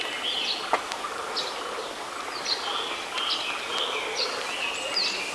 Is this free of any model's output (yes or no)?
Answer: yes